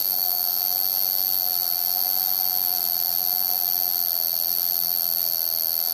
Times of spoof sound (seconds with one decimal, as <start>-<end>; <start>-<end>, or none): 0.0-0.6

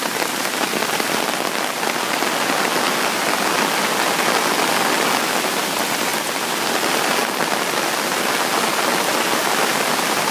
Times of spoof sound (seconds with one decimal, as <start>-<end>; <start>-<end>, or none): none